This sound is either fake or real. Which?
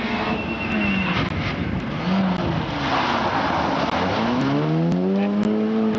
real